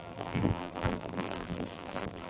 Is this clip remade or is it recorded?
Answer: remade